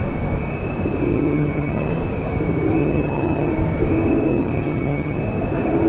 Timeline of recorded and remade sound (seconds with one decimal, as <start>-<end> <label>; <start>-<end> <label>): 0.0-1.1 recorded; 1.1-1.9 remade; 1.9-2.8 recorded; 2.8-3.5 remade; 3.5-4.3 recorded; 4.3-5.2 remade; 5.2-5.9 recorded